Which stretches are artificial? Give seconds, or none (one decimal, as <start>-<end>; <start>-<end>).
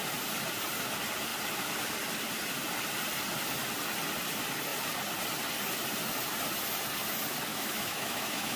7.5-8.6